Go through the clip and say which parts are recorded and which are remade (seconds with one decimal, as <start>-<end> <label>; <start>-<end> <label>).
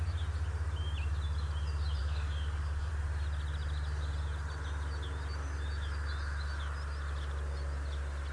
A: 0.0-2.0 recorded; 2.0-2.9 remade; 2.9-8.3 recorded